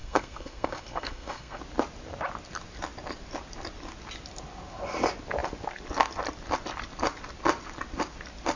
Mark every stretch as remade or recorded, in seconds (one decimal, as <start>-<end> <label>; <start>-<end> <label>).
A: 0.0-1.6 remade; 1.6-8.6 recorded